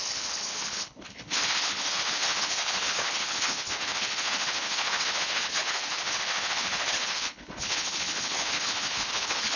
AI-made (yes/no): yes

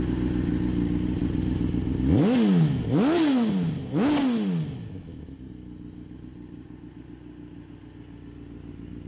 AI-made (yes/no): no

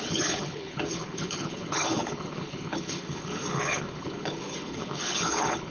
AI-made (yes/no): yes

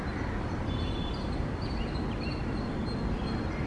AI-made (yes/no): no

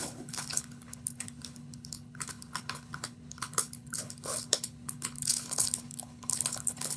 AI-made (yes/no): yes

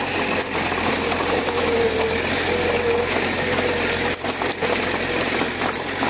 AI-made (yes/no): no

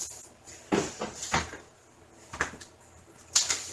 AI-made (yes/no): no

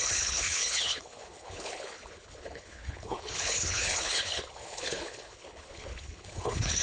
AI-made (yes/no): yes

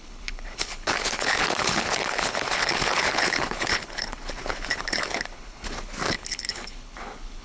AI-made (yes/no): yes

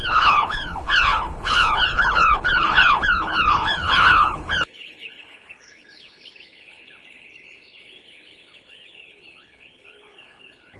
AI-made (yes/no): yes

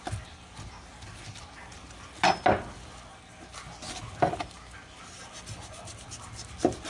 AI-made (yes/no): no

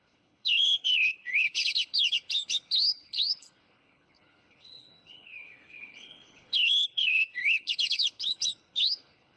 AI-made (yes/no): yes